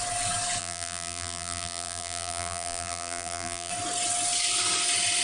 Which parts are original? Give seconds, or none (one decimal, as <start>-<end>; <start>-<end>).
0.0-0.6; 3.7-5.2